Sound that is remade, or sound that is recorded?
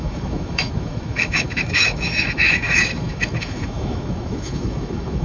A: remade